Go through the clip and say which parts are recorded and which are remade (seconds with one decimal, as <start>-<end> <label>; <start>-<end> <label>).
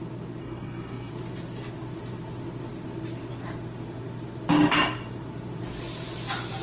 0.0-0.4 recorded; 0.4-1.1 remade; 1.1-6.6 recorded